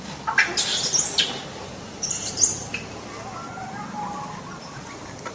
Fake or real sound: real